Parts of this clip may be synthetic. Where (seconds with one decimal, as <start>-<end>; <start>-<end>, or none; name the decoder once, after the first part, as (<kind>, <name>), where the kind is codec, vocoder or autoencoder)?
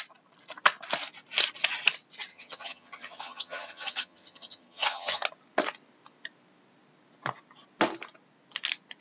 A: 2.3-5.2 (vocoder, HiFi-GAN)